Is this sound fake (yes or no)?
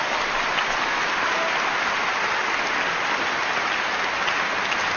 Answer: no